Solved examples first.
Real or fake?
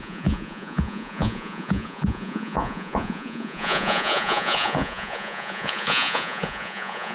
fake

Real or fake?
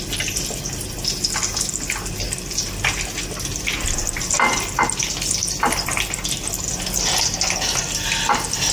real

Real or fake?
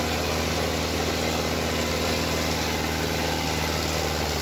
real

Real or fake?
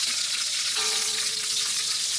fake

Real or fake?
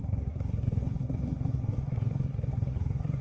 fake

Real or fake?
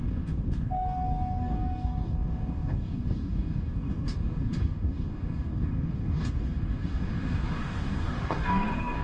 fake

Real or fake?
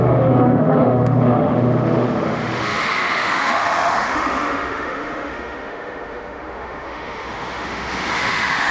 fake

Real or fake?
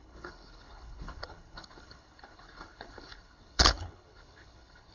fake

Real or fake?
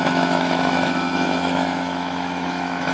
fake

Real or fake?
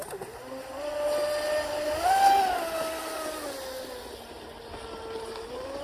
real